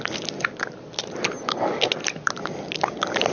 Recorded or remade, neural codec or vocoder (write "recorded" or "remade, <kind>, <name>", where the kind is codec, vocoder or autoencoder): recorded